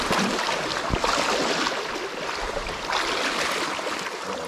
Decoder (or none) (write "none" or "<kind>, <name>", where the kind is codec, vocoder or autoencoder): none